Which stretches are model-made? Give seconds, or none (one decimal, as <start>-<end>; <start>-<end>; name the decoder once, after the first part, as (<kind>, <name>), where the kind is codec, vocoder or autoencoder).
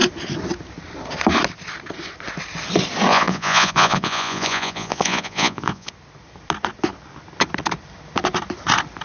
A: 3.1-5.9 (vocoder, Vocos)